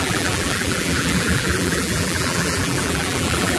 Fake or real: fake